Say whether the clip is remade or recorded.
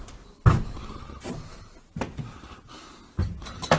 recorded